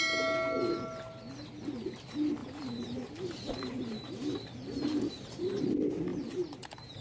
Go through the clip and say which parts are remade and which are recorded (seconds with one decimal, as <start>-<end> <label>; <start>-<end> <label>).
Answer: 0.0-2.4 recorded; 2.4-5.6 remade; 5.6-6.1 recorded; 6.1-7.0 remade

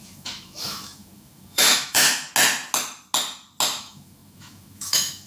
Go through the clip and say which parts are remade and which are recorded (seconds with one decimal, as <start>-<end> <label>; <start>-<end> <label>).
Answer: 0.0-2.3 remade; 2.3-3.8 recorded; 3.8-5.3 remade

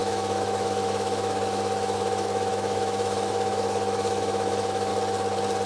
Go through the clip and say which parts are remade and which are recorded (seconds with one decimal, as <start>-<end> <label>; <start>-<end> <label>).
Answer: 0.0-4.9 remade; 4.9-5.7 recorded

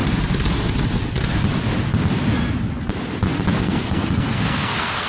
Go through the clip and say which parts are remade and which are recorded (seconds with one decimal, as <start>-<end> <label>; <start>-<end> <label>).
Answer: 0.0-3.6 recorded; 3.6-5.1 remade

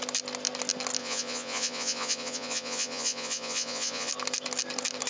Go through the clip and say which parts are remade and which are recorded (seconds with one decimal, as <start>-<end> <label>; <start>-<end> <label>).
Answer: 0.0-1.0 recorded; 1.0-4.1 remade; 4.1-5.1 recorded

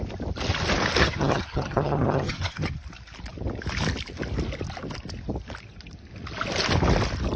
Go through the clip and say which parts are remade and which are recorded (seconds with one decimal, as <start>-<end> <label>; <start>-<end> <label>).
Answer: 0.0-1.0 recorded; 1.0-2.7 remade; 2.7-7.4 recorded

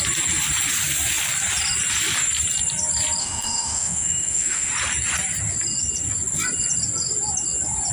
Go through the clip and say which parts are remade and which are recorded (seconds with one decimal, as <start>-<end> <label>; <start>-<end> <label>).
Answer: 0.0-3.2 recorded; 3.2-4.7 remade; 4.7-7.9 recorded